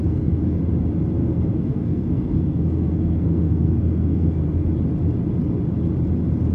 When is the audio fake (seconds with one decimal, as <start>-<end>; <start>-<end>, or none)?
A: 0.0-0.6; 1.2-4.7